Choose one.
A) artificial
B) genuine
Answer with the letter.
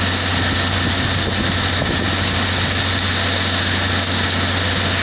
B